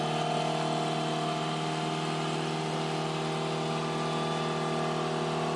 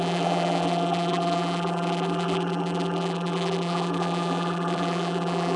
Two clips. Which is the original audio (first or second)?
first